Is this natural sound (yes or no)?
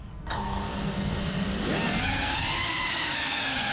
no